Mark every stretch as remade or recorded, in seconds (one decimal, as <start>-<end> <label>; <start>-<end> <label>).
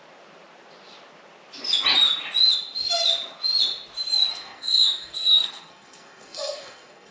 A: 0.0-4.3 recorded; 4.3-7.1 remade